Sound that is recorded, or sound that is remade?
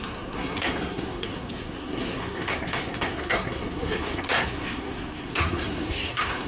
remade